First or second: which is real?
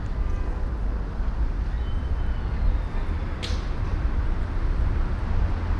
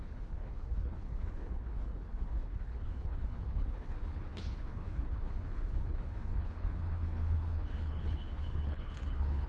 first